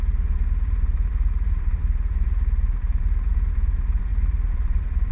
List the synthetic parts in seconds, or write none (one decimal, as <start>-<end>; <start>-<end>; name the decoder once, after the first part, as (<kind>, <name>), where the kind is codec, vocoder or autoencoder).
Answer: 0.0-5.1 (vocoder, BigVGAN v2)